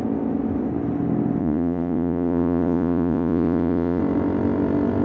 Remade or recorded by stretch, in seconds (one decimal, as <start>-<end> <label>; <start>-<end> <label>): 0.0-1.4 recorded; 1.4-4.0 remade; 4.0-5.0 recorded